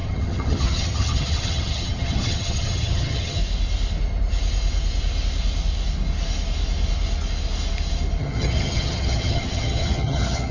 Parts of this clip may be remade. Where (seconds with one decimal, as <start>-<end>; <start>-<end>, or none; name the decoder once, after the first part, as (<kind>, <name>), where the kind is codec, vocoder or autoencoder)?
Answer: 0.0-3.4 (vocoder, HiFi-GAN); 8.2-10.5